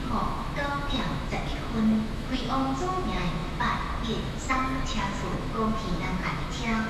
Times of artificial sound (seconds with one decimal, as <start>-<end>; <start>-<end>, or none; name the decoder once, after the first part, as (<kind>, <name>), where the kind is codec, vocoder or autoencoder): 0.0-6.9 (autoencoder, DAC-VAE)